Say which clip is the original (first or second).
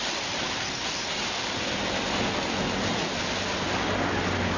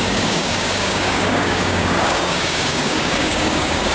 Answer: first